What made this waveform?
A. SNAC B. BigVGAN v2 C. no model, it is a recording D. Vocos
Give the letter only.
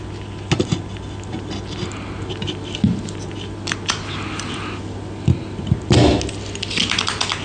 C